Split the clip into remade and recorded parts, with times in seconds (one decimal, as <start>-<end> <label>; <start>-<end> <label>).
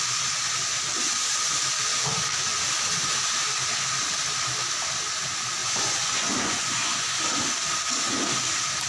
0.0-5.6 recorded; 5.6-7.2 remade; 7.2-8.9 recorded